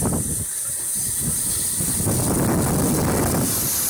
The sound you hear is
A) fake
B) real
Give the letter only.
B